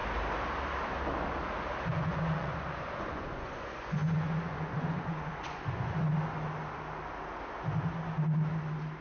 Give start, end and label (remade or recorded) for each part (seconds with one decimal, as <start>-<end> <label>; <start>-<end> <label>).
0.0-1.9 recorded; 1.9-6.1 remade; 6.1-9.0 recorded